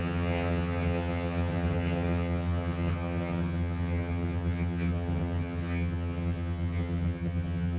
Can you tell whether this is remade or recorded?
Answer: remade